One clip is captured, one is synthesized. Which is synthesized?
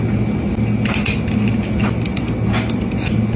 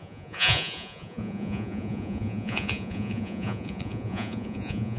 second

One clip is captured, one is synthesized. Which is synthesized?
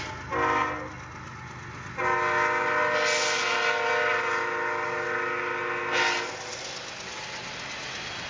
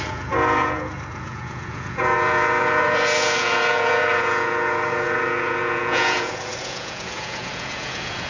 second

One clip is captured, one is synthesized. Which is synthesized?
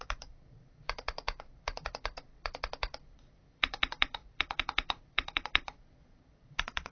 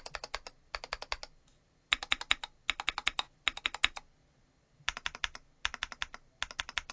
first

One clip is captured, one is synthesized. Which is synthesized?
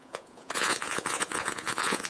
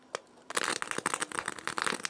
first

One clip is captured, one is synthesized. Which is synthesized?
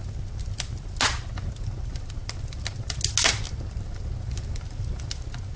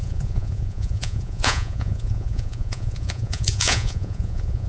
second